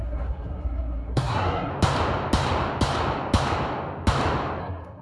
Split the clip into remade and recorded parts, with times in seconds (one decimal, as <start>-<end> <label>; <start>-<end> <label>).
0.0-1.7 remade; 1.7-4.6 recorded; 4.6-5.0 remade